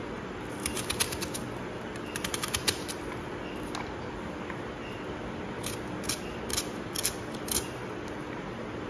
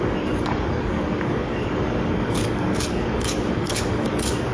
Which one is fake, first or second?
second